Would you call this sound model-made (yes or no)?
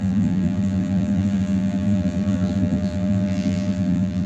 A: yes